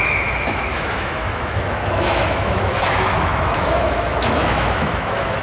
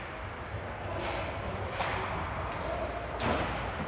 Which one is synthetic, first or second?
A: first